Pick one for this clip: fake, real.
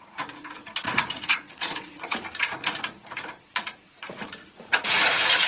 fake